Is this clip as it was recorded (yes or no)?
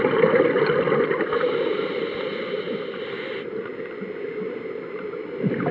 yes